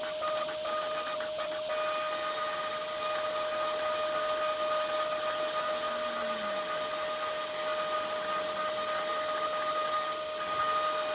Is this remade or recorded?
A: recorded